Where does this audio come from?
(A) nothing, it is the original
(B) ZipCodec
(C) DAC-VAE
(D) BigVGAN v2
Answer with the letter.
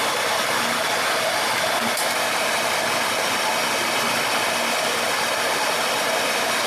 A